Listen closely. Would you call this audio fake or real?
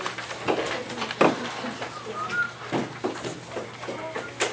real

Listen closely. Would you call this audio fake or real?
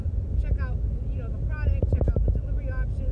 real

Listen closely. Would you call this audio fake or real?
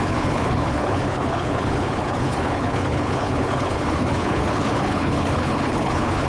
fake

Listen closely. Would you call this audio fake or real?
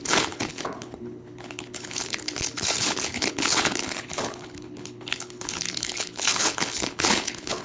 fake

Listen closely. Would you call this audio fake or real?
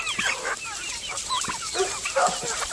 real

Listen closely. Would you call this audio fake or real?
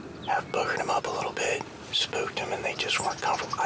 real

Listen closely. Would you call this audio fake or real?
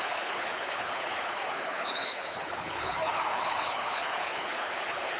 fake